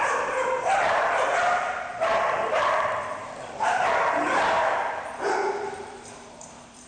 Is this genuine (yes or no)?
no